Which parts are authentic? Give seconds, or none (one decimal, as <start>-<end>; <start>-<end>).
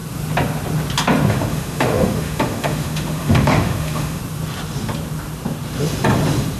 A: 0.0-1.3; 4.2-6.6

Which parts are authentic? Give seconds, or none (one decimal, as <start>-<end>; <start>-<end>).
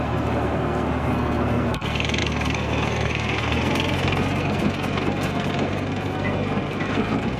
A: none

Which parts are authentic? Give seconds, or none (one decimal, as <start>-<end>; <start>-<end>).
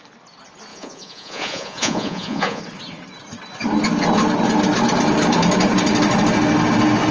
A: 0.0-0.7; 2.6-7.1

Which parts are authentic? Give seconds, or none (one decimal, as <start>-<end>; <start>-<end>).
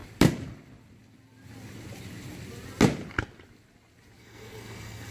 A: 0.0-4.2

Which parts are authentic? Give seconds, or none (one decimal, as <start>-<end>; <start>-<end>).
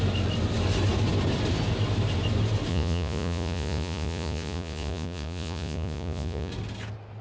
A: 0.0-2.7; 6.5-7.2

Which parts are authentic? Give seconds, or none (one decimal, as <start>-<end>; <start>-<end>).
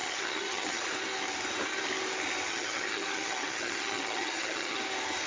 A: 0.8-2.5; 4.8-5.3